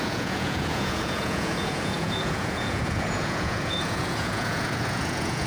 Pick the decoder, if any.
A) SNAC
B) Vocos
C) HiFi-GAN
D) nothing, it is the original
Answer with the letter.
B